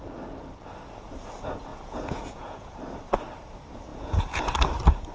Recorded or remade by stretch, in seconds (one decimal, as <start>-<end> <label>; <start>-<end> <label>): 0.0-1.7 recorded; 1.7-2.8 remade; 2.8-3.9 recorded; 3.9-4.5 remade; 4.5-5.1 recorded